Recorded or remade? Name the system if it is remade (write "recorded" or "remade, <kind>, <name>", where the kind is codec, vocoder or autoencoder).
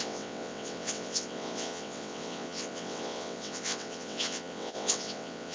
remade, vocoder, WaveNeXt